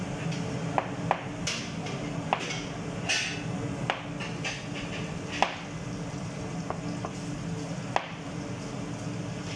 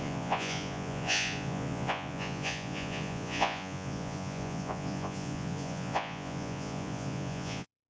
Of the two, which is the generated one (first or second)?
second